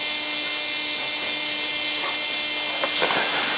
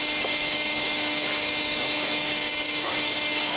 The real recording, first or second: first